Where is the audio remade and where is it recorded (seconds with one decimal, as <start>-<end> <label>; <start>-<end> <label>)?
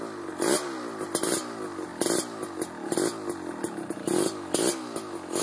0.0-5.4 recorded